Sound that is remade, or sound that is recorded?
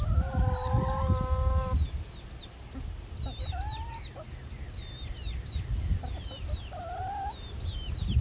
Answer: recorded